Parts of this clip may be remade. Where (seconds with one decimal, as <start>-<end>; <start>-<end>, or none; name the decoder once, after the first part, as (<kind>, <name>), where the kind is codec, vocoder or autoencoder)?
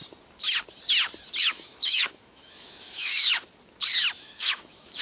1.4-3.1 (autoencoder, DAC-VAE); 4.2-5.0